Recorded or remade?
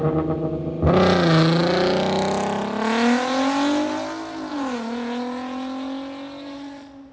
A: recorded